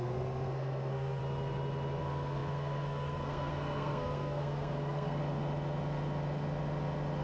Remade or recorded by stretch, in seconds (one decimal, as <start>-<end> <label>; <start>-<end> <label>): 0.0-1.2 remade; 1.2-2.0 recorded; 2.0-5.2 remade; 5.2-7.2 recorded

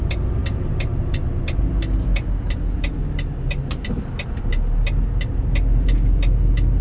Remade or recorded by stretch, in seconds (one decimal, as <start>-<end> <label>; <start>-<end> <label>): 0.0-6.8 recorded